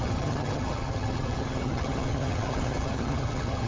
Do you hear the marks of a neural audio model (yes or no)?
yes